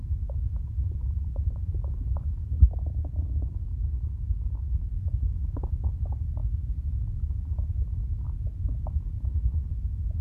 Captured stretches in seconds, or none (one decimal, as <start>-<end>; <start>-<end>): 0.0-10.2